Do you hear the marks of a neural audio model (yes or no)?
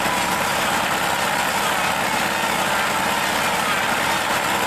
no